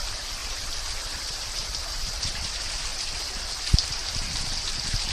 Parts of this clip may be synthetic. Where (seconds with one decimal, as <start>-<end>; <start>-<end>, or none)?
0.0-0.4; 1.4-2.9